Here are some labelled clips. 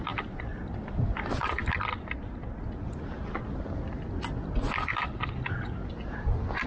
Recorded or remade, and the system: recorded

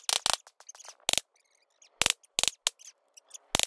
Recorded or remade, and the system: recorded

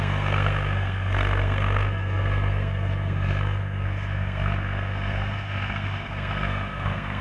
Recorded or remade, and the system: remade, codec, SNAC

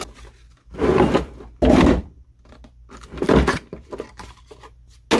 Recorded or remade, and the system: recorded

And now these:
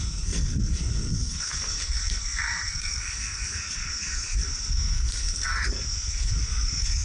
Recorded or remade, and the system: remade, codec, SNAC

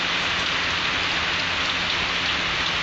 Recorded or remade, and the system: recorded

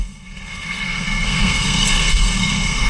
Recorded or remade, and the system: remade, codec, SNAC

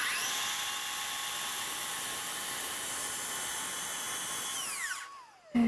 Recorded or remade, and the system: recorded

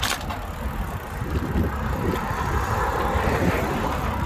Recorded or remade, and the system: recorded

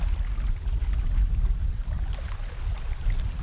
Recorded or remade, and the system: recorded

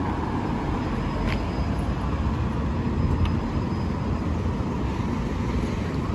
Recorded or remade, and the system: recorded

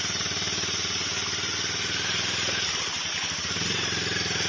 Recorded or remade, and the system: recorded